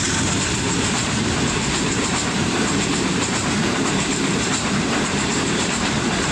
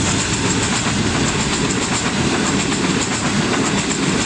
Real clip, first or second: second